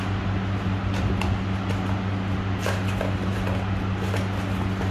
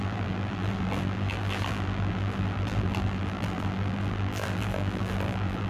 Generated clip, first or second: second